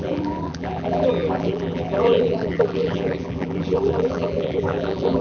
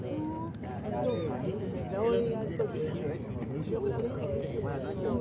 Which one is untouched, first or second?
second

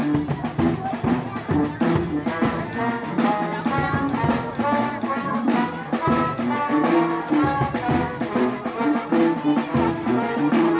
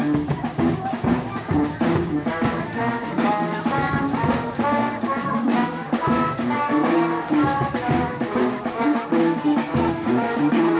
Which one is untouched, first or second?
first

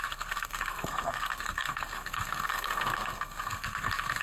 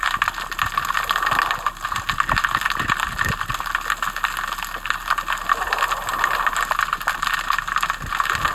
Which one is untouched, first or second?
second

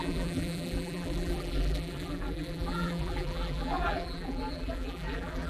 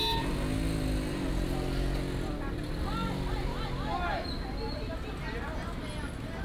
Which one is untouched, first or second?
second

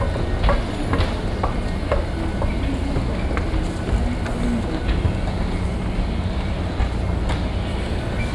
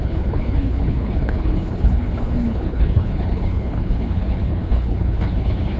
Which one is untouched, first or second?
first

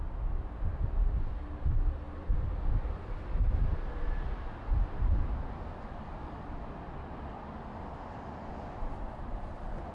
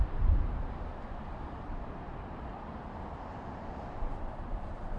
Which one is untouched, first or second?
first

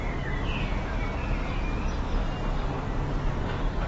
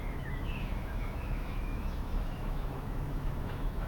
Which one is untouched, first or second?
first